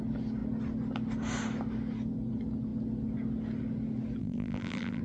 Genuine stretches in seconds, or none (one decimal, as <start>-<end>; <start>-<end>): 0.0-4.2